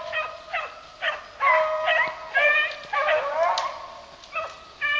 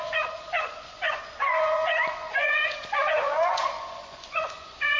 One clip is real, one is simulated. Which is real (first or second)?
first